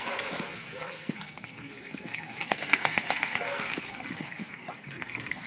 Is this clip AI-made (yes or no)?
yes